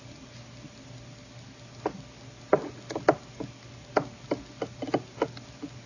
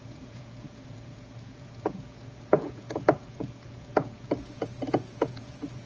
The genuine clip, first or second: first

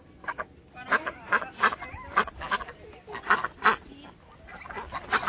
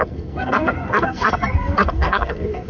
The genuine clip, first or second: first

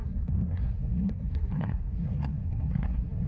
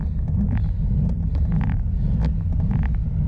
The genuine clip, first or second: second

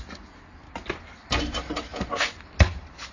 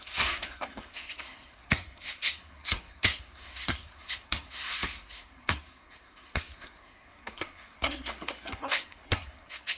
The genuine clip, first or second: first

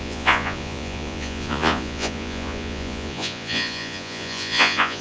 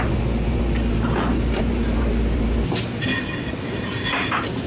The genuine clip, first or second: second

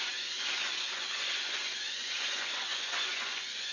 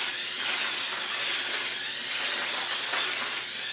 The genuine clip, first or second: second